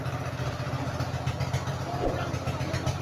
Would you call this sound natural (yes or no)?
yes